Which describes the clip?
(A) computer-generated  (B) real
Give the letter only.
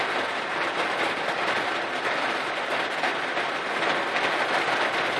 B